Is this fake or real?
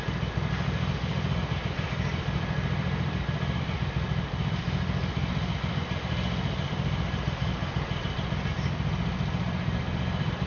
real